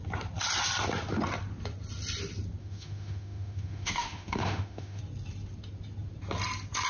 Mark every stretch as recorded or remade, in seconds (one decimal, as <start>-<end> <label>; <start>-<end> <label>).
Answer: 0.0-2.6 recorded; 2.6-5.0 remade; 5.0-6.9 recorded